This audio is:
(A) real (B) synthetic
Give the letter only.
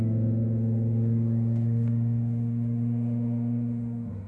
B